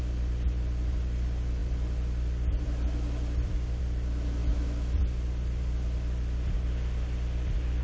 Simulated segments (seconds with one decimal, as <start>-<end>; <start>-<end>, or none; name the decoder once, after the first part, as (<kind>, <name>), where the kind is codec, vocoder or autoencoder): none